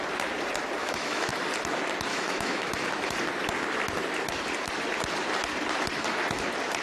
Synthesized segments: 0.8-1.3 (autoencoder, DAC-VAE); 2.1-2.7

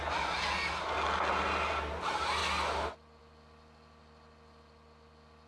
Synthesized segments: none

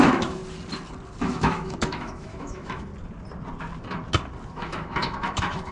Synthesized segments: 0.0-0.4 (autoencoder, DAC-VAE); 1.2-2.9; 4.5-5.7

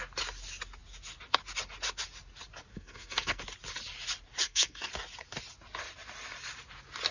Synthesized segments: 2.7-3.4 (codec, SNAC); 4.4-4.9

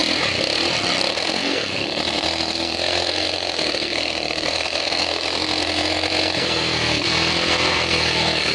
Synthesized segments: 1.1-8.5 (codec, SNAC)

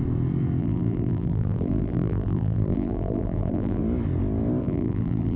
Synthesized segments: 0.6-3.8 (vocoder, BigVGAN v2); 4.6-5.4